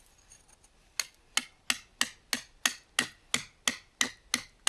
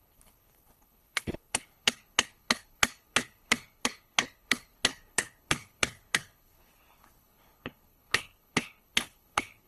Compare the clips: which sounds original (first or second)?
first